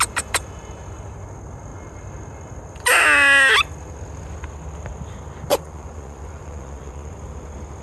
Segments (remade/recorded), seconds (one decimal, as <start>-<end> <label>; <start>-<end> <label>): 0.0-5.5 recorded; 5.5-7.1 remade; 7.1-7.8 recorded